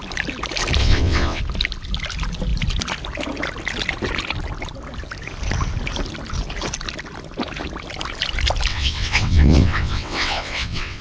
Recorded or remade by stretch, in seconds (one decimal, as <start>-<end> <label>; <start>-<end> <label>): 0.0-0.8 recorded; 0.8-1.4 remade; 1.4-8.7 recorded; 8.7-11.0 remade